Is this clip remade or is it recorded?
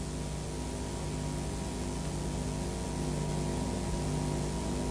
recorded